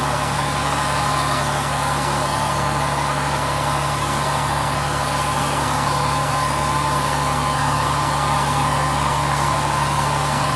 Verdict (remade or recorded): remade